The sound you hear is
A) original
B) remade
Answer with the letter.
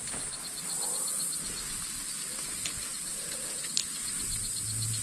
A